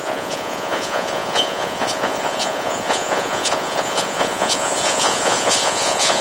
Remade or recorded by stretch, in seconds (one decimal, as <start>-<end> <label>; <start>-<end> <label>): 0.0-6.2 remade